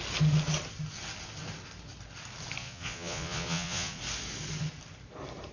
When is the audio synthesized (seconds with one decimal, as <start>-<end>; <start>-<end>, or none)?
2.6-4.0